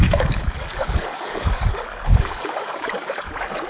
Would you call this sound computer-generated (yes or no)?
yes